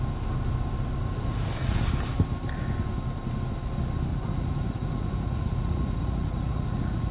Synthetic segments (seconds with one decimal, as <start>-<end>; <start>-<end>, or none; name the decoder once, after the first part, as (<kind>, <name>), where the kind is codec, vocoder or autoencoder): 1.0-1.8 (vocoder, Vocos); 4.1-7.1